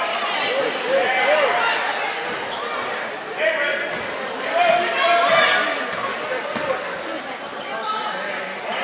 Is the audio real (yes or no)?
yes